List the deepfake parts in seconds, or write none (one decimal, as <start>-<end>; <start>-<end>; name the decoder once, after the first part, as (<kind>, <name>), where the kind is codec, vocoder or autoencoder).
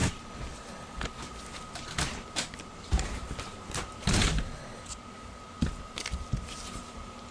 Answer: 3.7-4.2 (vocoder, BigVGAN v2); 6.5-7.3